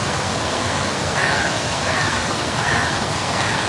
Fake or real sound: fake